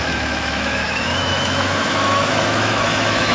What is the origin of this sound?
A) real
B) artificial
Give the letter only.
B